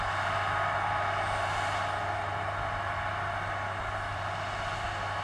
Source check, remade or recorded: recorded